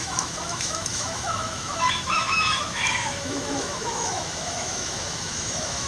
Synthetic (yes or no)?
yes